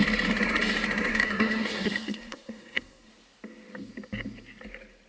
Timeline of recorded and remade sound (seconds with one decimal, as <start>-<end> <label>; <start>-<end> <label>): 0.0-1.1 recorded; 1.1-3.1 remade; 3.1-5.1 recorded